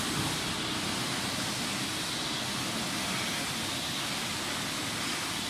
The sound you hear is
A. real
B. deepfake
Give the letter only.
A